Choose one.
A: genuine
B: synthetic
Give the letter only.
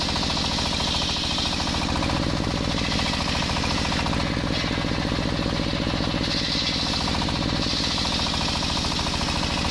A